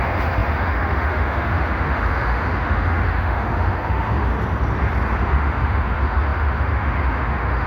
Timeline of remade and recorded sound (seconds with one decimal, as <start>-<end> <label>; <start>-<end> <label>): 0.0-4.3 remade; 4.3-5.2 recorded; 5.2-7.7 remade